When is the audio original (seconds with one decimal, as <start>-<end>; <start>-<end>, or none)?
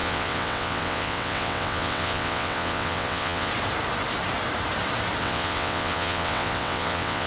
3.5-5.2